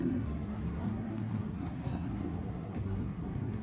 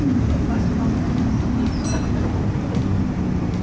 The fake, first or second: first